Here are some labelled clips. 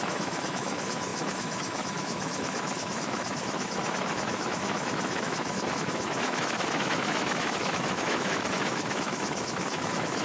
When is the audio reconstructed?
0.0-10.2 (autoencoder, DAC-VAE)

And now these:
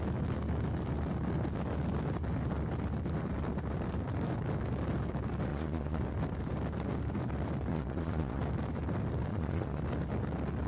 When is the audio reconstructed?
5.5-6.0 (vocoder, Vocos); 7.7-8.4; 9.3-9.8